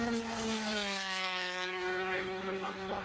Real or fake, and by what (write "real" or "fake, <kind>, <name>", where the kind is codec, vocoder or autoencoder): fake, codec, SNAC